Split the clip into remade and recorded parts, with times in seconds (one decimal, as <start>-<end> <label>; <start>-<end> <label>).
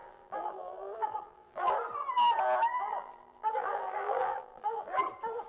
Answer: 0.0-1.7 remade; 1.7-2.7 recorded; 2.7-5.0 remade; 5.0-5.5 recorded